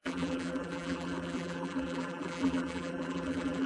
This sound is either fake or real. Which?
fake